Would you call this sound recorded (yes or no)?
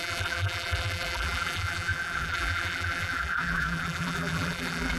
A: no